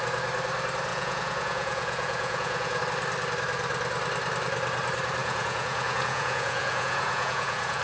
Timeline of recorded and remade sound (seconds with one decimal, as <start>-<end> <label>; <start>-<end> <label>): 0.0-0.9 recorded; 0.9-2.8 remade; 2.8-5.2 recorded; 5.2-7.8 remade